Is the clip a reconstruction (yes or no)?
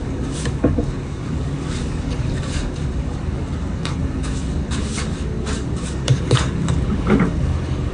yes